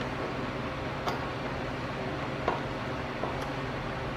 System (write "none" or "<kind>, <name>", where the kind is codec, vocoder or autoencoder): none